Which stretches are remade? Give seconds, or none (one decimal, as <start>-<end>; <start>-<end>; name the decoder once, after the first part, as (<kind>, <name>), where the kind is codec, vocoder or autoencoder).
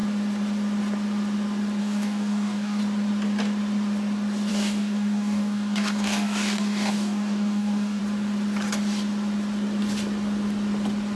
1.8-2.8 (codec, DAC); 4.5-8.0